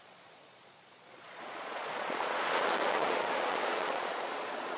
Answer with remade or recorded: remade